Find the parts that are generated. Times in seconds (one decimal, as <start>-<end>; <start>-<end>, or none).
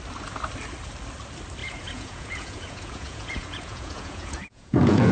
1.6-5.1